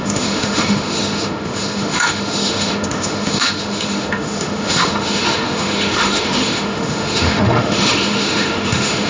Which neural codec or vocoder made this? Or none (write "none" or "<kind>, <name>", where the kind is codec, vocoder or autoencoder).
autoencoder, DAC-VAE